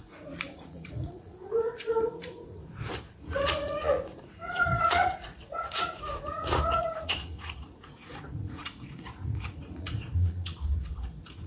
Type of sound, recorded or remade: remade